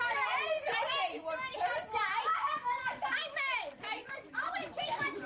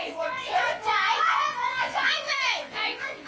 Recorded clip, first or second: first